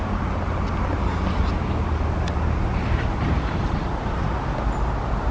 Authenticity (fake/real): real